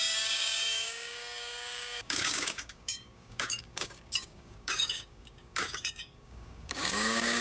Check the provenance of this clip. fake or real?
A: fake